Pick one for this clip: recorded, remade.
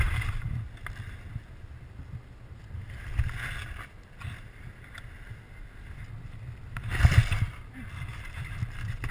recorded